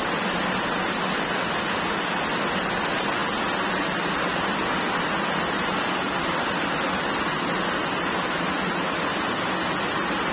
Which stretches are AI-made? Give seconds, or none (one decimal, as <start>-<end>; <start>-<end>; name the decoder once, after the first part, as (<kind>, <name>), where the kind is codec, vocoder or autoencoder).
none